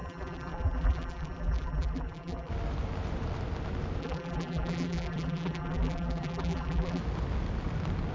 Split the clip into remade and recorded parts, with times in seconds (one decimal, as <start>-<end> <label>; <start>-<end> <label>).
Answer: 0.0-2.5 remade; 2.5-4.0 recorded; 4.0-7.0 remade; 7.0-8.1 recorded